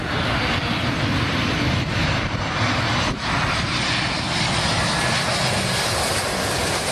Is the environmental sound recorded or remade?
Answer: recorded